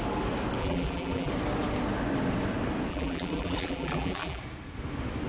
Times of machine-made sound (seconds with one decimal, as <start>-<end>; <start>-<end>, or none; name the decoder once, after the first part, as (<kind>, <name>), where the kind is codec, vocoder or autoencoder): 0.6-1.3 (vocoder, BigVGAN v2); 2.9-4.4